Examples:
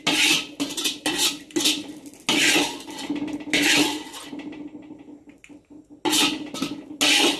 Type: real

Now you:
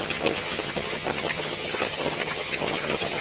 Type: fake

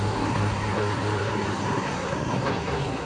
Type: fake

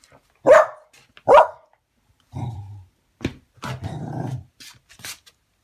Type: real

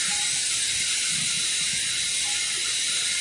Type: real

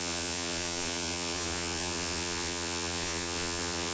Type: fake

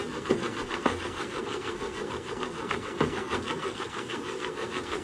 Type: fake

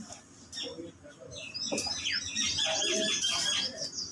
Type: real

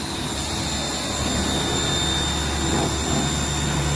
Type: real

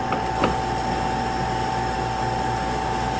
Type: real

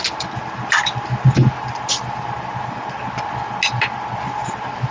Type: real